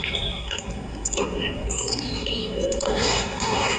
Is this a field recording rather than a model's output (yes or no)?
no